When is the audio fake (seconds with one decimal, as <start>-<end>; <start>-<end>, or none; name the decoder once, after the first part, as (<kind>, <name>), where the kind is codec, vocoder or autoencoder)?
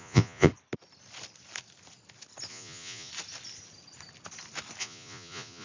0.0-0.5 (vocoder, Vocos); 2.5-3.1; 4.8-5.6